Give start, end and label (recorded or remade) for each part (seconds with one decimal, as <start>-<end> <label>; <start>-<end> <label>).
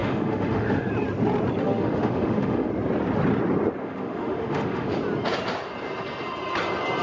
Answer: 0.0-0.9 remade; 0.9-1.6 recorded; 1.6-2.7 remade; 2.7-3.8 recorded; 3.8-4.9 remade; 4.9-7.0 recorded